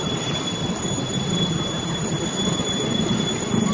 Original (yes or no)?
yes